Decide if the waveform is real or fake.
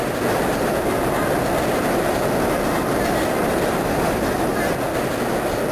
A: real